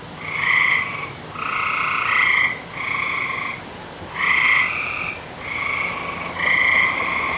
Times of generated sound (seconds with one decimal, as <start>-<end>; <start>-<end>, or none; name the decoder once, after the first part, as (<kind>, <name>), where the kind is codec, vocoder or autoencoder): none

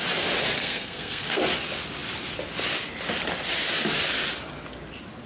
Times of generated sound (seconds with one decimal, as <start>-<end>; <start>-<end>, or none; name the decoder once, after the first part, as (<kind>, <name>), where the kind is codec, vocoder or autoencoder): 0.6-1.4 (codec, SNAC)

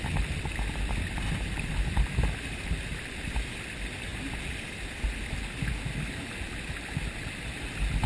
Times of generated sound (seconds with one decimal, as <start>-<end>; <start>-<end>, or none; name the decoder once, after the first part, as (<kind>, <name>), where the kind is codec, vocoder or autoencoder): none

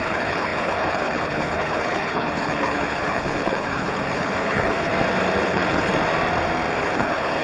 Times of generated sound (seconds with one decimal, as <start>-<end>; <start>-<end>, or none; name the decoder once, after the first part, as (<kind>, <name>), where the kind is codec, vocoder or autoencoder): 0.0-4.9 (codec, HILCodec); 5.4-5.9; 6.8-7.4

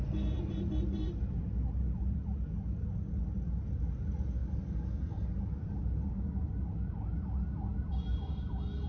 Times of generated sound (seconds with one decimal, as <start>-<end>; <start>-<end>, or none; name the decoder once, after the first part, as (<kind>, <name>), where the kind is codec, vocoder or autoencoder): none